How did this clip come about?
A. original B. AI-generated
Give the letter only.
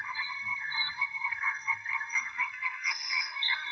B